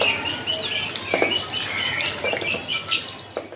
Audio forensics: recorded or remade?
recorded